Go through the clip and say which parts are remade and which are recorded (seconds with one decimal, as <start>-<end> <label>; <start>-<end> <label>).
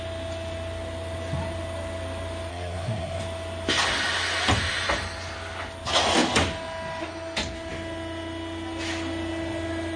0.0-2.5 recorded; 2.5-3.2 remade; 3.2-10.0 recorded